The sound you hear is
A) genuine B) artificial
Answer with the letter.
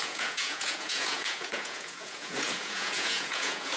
B